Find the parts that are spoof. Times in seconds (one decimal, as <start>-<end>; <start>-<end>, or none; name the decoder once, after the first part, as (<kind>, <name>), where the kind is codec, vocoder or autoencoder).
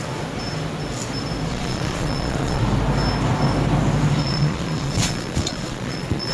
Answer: 1.5-2.6 (vocoder, Vocos); 4.2-6.3